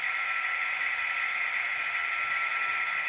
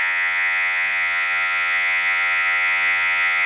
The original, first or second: first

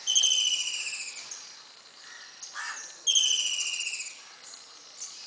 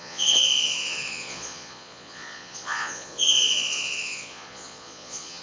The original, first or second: first